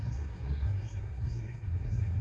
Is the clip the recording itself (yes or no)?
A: no